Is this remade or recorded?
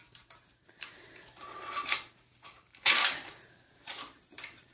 remade